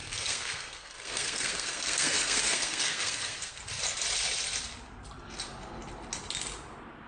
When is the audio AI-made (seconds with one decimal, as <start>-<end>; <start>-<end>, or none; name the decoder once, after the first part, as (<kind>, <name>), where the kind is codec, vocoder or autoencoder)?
0.0-3.6 (codec, SNAC)